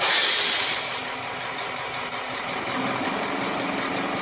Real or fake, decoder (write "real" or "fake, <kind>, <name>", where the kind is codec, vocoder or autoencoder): real